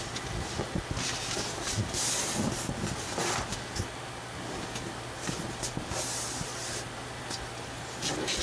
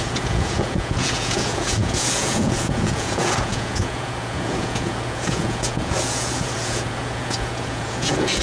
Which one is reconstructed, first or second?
second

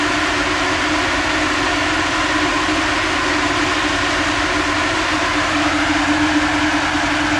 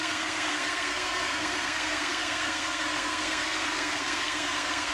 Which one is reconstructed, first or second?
second